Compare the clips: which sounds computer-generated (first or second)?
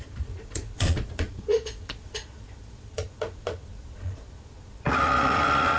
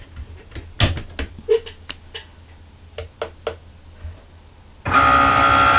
first